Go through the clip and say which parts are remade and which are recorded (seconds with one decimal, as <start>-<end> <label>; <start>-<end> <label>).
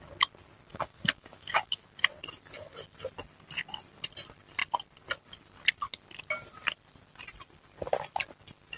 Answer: 0.0-0.7 recorded; 0.7-1.8 remade; 1.8-8.8 recorded